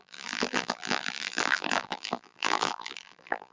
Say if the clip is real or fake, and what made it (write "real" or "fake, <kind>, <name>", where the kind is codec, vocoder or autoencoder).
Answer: fake, vocoder, BigVGAN v2